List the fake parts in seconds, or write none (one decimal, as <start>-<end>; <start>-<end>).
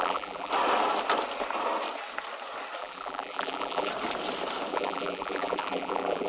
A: 0.0-0.5; 2.8-3.9; 4.7-6.3